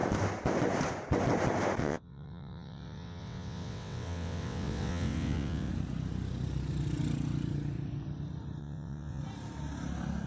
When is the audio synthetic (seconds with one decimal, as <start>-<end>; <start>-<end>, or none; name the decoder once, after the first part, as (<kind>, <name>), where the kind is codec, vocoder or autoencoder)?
1.8-5.7 (vocoder, WaveNeXt); 8.6-9.2